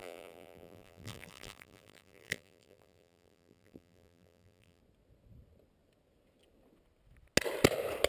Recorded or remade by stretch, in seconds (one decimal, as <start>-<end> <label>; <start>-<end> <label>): 0.0-4.8 remade; 4.8-8.1 recorded